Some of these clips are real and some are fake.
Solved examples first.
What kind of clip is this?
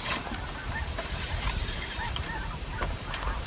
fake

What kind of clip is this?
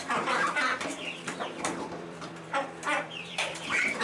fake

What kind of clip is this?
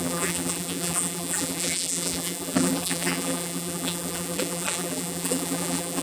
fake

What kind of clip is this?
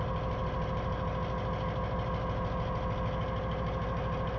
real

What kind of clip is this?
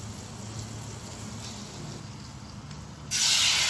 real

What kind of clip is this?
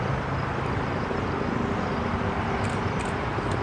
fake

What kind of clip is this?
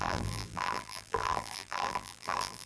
fake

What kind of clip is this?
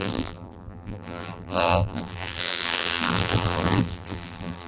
fake